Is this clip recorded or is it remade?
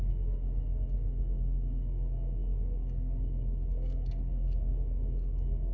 remade